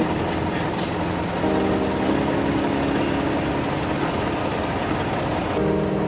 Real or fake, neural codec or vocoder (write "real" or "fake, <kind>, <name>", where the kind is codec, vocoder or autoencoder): real